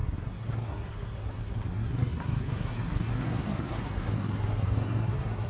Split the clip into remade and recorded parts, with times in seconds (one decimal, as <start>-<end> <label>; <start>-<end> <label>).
0.0-5.5 remade